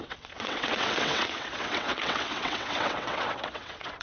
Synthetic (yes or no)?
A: yes